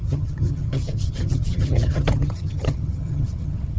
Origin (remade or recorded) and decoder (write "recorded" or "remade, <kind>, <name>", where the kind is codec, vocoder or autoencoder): remade, vocoder, HiFi-GAN